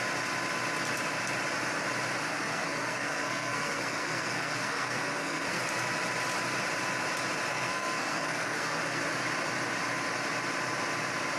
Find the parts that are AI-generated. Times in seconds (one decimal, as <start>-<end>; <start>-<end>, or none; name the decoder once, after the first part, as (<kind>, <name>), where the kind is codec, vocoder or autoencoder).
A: 2.3-5.6 (codec, SNAC); 7.5-9.0